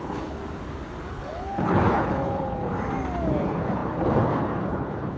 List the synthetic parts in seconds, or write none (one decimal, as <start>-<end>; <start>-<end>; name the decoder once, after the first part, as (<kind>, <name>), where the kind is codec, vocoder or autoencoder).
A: 0.0-0.4 (codec, HILCodec); 1.1-2.7; 3.4-5.2